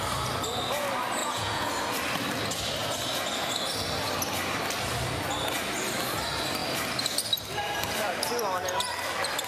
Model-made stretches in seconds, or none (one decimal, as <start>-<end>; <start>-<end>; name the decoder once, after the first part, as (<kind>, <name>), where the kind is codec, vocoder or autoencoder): 1.2-1.7 (vocoder, Vocos)